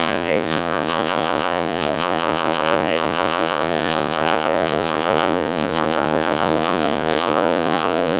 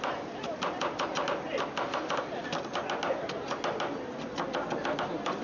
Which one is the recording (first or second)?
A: second